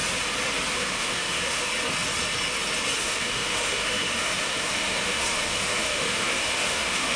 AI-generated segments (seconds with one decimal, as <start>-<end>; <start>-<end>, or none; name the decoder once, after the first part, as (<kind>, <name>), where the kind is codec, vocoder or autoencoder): 0.7-1.7 (autoencoder, DAC-VAE); 3.0-7.2